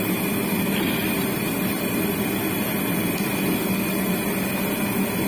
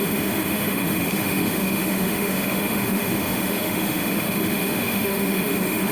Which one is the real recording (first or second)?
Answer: first